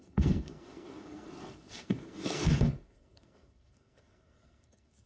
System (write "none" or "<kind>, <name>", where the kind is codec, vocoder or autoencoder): codec, SNAC